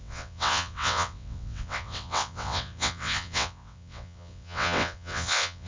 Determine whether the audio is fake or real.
fake